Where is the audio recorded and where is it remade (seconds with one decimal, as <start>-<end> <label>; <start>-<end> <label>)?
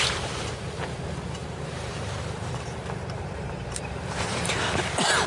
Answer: 0.0-1.4 recorded; 1.4-4.6 remade; 4.6-5.3 recorded